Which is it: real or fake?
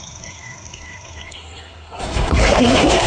fake